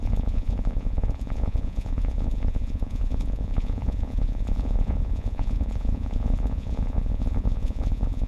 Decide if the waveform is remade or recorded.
remade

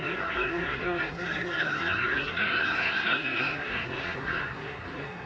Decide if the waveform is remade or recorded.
remade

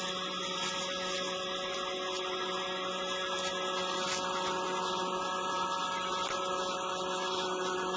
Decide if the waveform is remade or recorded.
recorded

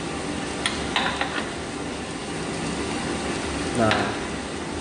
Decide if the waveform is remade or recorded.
recorded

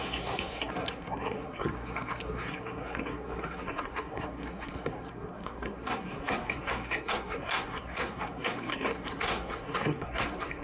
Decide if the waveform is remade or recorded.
remade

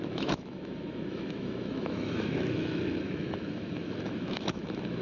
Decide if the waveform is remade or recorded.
remade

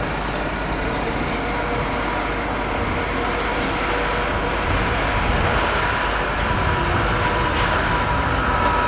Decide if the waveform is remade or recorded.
recorded